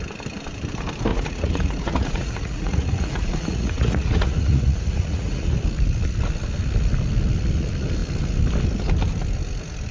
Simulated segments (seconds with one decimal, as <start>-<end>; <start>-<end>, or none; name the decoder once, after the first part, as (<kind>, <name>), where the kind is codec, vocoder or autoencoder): 1.1-5.6 (vocoder, Vocos)